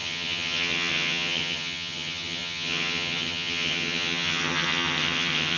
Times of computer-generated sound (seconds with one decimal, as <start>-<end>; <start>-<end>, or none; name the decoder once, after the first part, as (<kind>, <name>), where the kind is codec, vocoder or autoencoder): 0.0-5.6 (vocoder, HiFi-GAN)